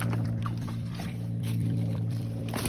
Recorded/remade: remade